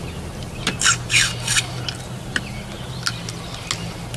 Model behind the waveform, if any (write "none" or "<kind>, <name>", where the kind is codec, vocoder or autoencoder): none